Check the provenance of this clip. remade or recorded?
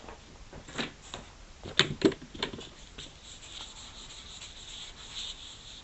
recorded